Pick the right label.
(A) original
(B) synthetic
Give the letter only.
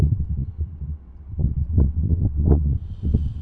B